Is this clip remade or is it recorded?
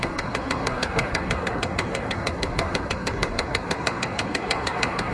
remade